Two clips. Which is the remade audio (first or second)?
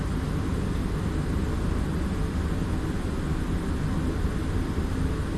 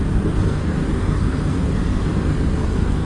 second